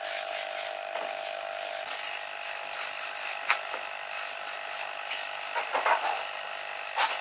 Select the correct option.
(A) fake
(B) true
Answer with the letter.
B